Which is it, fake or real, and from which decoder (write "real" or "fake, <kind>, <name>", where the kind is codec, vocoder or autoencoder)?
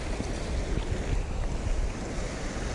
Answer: real